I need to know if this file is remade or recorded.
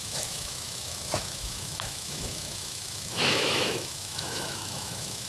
remade